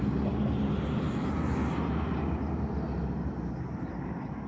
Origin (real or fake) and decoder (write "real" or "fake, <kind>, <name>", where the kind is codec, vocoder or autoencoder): real